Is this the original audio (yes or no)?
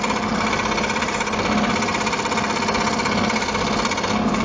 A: yes